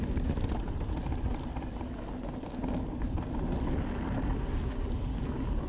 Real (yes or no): yes